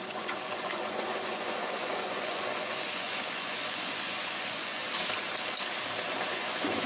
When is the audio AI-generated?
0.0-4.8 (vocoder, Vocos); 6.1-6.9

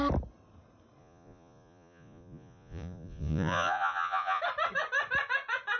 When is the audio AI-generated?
1.0-4.4 (vocoder, Vocos)

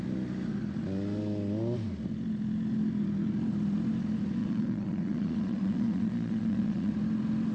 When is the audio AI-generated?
4.4-6.9 (vocoder, Vocos)

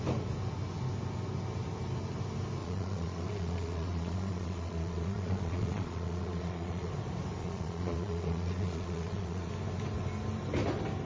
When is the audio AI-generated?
2.6-6.9 (vocoder, Vocos); 7.4-9.5